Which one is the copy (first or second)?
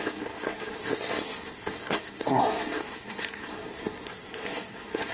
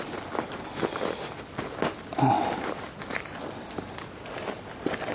first